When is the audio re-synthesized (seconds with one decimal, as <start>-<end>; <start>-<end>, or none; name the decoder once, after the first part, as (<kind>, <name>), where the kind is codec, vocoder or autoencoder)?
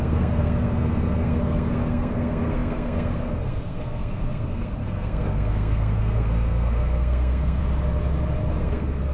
0.0-7.6 (codec, SNAC); 8.6-9.1